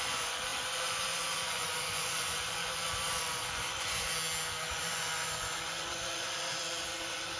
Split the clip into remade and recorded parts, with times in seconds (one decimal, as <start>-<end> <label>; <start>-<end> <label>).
0.0-4.1 remade; 4.1-4.7 recorded; 4.7-7.4 remade